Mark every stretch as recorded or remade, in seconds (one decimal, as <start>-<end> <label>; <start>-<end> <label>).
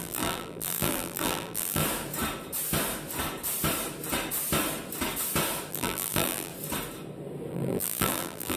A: 0.0-1.8 remade; 1.8-5.7 recorded; 5.7-6.5 remade; 6.5-7.5 recorded; 7.5-8.6 remade